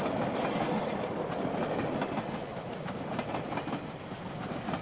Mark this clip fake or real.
real